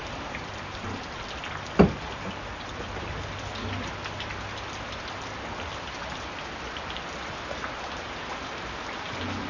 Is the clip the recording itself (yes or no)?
yes